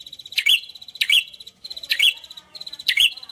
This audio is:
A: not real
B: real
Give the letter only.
A